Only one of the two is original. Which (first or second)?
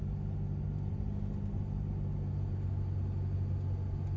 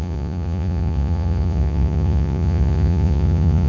first